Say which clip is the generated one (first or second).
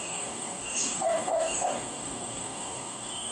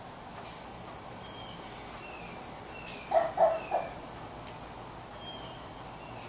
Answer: first